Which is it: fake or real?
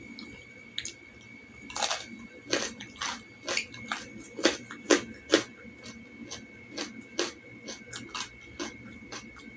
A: real